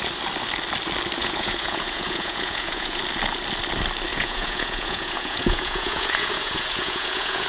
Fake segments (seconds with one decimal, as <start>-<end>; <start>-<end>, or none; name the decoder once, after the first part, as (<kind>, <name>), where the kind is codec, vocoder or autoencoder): 1.2-3.0 (vocoder, Vocos); 4.1-7.5